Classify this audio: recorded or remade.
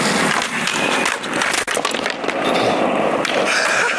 recorded